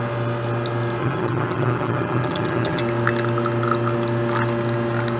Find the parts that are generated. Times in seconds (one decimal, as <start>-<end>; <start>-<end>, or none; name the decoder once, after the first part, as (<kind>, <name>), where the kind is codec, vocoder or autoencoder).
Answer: 1.0-2.8 (vocoder, HiFi-GAN)